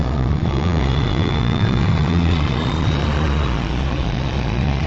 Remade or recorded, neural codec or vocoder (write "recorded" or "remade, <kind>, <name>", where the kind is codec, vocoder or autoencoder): remade, vocoder, Vocos